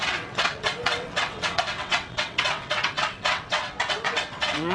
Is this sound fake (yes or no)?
yes